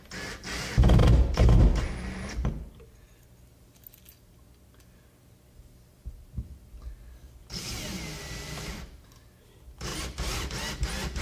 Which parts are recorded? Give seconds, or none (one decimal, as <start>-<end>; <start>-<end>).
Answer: 0.0-9.9; 10.5-11.2

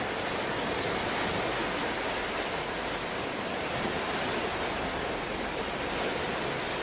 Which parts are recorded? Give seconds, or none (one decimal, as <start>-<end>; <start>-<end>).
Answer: 0.0-6.8

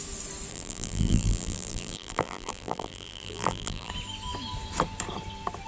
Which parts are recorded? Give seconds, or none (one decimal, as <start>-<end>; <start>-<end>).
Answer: 0.0-0.5; 3.9-5.7

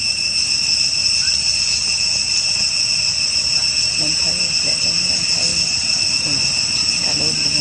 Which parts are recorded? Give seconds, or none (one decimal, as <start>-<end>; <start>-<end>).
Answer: 0.0-1.0; 3.7-5.5; 6.1-7.6

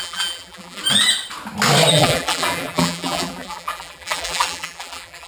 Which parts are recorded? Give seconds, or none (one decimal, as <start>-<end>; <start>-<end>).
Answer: 0.8-1.9

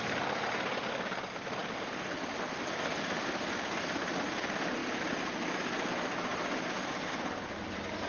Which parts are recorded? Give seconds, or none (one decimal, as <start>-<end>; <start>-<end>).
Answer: 0.0-1.6; 3.4-4.8; 5.3-6.3; 7.1-8.1